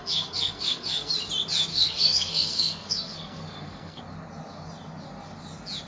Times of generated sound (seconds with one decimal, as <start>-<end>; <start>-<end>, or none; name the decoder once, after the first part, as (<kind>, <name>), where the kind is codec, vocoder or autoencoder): 0.0-1.1 (codec, SNAC); 1.7-4.0